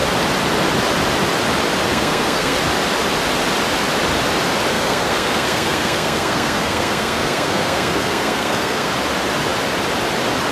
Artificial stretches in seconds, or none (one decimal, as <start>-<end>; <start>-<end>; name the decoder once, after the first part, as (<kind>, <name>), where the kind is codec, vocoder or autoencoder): 1.9-2.6 (codec, SNAC); 4.7-8.9